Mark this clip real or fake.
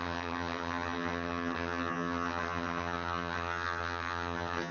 fake